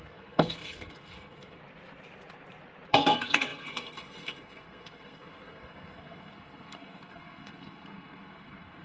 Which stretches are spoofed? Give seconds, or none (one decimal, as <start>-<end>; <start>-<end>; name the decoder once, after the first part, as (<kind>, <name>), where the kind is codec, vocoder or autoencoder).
0.0-1.6 (codec, SNAC); 2.9-8.8